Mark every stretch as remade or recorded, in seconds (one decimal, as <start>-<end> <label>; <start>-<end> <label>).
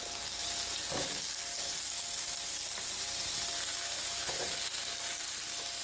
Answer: 0.0-3.7 recorded; 3.7-4.4 remade; 4.4-5.8 recorded